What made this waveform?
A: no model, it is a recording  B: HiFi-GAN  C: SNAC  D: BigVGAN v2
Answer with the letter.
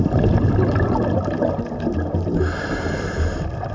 A